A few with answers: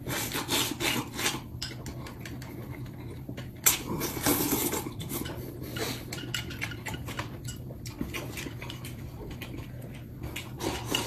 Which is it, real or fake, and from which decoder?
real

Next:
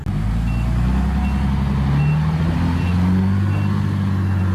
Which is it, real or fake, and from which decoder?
real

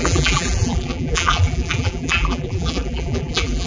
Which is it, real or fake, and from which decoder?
fake, vocoder, BigVGAN v2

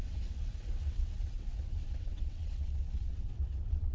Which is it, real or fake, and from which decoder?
fake, vocoder, WaveNeXt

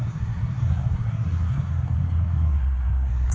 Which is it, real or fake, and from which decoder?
fake, codec, SNAC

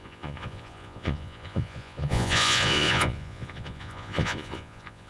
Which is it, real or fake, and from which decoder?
fake, vocoder, Vocos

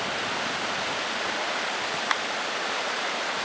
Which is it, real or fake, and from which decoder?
real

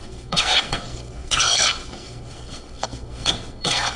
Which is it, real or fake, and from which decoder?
fake, codec, SNAC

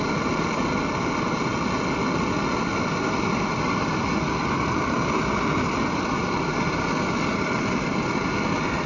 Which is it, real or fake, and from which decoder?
real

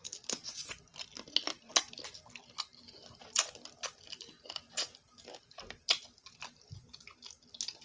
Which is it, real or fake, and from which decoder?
real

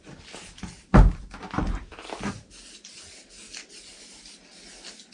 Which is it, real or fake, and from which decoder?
real